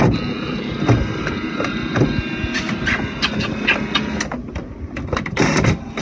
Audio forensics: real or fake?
real